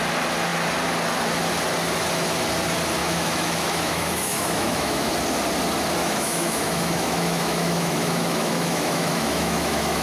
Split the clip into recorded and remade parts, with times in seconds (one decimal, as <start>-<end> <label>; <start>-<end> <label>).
0.0-3.0 recorded; 3.0-5.1 remade; 5.1-6.0 recorded; 6.0-10.0 remade